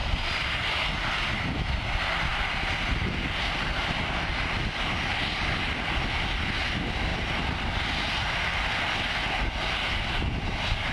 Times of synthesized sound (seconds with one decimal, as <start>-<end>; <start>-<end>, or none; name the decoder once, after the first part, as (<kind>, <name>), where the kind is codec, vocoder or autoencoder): 0.0-0.6 (vocoder, BigVGAN v2); 2.3-4.3; 7.1-7.8